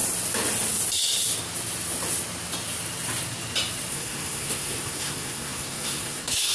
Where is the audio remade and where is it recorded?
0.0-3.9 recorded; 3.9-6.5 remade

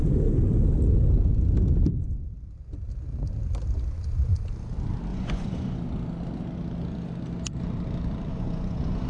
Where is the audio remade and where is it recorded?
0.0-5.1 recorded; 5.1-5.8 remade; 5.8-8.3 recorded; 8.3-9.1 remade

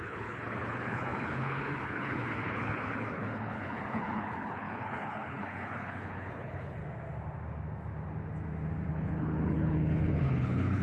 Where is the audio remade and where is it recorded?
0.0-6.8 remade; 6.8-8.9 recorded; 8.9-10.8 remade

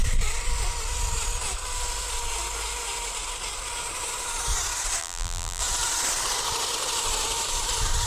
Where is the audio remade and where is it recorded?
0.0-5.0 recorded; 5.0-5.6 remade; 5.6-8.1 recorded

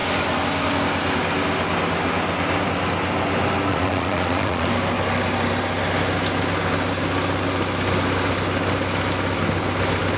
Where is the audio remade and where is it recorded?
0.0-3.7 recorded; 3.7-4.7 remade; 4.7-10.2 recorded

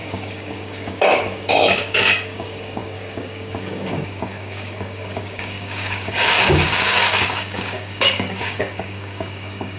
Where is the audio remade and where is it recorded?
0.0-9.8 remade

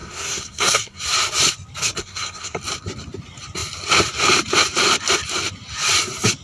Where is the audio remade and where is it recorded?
0.0-1.0 remade; 1.0-2.0 recorded; 2.0-2.6 remade; 2.6-6.4 recorded